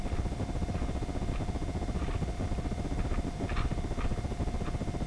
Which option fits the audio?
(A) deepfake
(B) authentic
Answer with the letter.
B